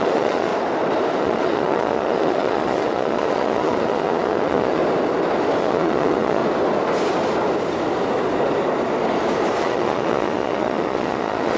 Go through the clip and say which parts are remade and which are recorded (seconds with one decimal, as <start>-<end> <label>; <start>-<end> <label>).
0.0-0.5 remade; 0.5-1.2 recorded; 1.2-4.8 remade; 4.8-5.6 recorded; 5.6-6.4 remade; 6.4-9.6 recorded; 9.6-11.6 remade